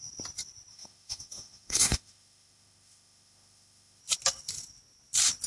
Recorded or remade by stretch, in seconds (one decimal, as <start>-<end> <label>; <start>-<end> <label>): 0.0-0.7 recorded; 0.7-4.0 remade; 4.0-5.5 recorded